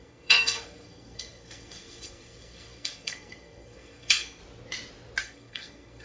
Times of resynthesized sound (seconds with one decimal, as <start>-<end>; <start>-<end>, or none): 0.0-4.4; 5.2-6.0